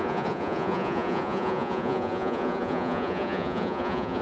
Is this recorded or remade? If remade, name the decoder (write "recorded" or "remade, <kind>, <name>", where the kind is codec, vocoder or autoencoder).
remade, vocoder, Vocos